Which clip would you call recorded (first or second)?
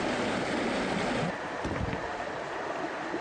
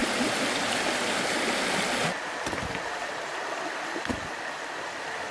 first